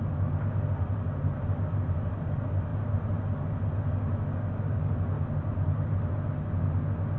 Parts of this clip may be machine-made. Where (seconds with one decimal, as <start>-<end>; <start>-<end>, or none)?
none